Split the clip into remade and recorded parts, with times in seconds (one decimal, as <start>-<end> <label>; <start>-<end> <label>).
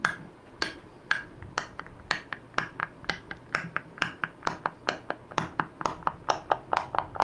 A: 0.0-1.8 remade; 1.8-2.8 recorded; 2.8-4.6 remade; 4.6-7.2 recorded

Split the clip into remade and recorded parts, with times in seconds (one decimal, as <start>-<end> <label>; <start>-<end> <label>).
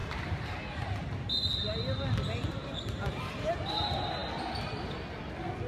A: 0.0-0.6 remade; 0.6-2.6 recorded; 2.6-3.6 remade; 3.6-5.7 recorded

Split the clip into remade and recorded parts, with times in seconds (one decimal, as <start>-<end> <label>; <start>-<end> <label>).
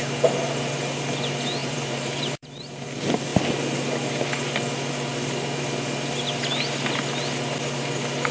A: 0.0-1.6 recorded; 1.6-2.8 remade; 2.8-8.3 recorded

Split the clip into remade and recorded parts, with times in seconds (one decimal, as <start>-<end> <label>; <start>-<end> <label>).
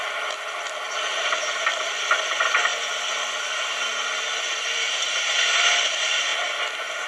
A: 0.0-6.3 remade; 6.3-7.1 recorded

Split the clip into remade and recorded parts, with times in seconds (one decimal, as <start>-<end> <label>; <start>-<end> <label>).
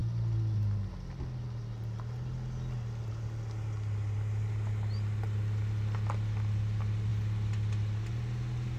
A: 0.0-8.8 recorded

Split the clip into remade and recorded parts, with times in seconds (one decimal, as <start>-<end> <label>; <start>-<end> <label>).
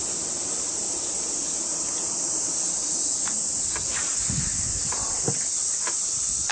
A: 0.0-6.5 recorded